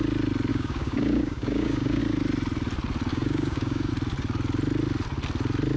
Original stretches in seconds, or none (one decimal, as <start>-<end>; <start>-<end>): 0.0-0.5; 2.0-3.1; 3.9-5.8